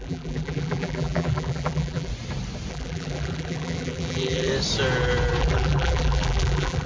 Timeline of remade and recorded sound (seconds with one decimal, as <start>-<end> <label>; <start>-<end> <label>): 0.0-2.1 remade; 2.1-2.7 recorded; 2.7-4.5 remade; 4.5-5.4 recorded; 5.4-6.9 remade